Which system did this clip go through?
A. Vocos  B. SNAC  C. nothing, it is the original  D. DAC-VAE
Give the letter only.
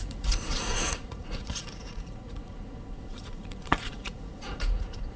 A